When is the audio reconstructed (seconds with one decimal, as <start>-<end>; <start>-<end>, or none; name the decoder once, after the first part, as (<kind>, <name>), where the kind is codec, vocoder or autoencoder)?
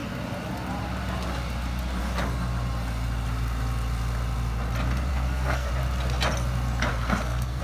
5.1-5.7 (codec, SNAC); 6.9-7.6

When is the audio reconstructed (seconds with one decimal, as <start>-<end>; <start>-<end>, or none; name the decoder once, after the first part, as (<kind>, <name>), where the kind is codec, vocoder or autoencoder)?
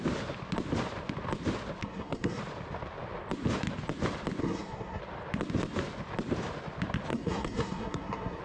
1.8-2.4 (codec, SNAC); 4.4-5.0; 7.1-8.4